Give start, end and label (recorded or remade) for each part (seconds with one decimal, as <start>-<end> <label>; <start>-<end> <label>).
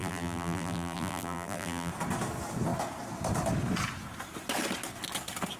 0.0-1.9 remade; 1.9-5.6 recorded